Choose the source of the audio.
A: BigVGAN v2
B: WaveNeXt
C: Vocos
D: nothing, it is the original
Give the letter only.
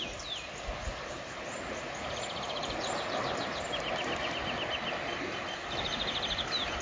D